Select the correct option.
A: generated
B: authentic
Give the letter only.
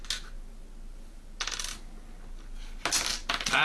B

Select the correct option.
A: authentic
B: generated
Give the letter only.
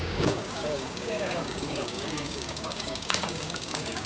B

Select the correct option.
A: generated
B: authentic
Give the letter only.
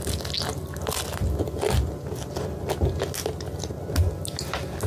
B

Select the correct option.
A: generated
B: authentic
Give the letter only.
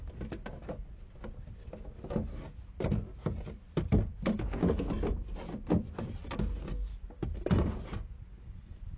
B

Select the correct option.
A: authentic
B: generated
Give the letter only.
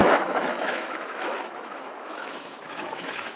B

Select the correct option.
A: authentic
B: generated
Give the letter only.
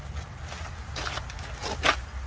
A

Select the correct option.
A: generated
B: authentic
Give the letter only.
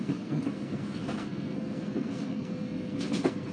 A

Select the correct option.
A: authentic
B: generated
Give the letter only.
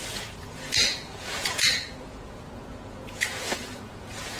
B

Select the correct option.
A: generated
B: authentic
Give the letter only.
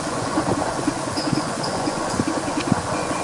A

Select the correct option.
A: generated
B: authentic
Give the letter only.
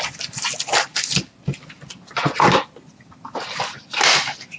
B